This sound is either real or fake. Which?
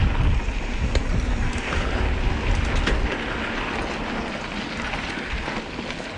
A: real